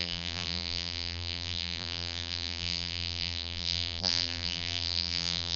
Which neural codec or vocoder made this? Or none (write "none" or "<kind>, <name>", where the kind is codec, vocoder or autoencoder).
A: vocoder, BigVGAN v2